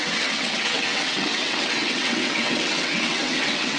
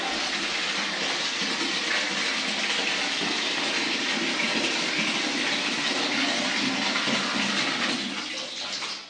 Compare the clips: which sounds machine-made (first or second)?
first